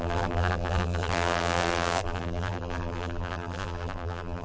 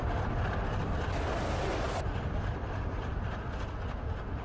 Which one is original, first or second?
second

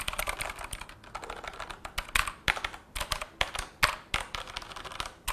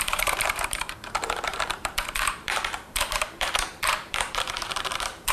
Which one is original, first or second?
first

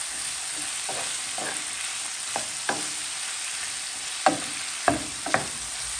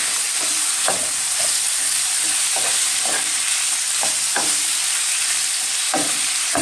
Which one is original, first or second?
first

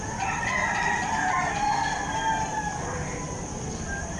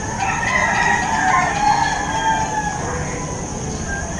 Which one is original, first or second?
second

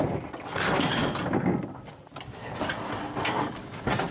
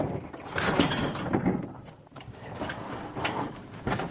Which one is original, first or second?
first